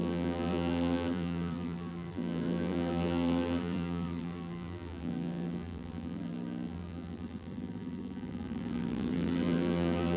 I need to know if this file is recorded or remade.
remade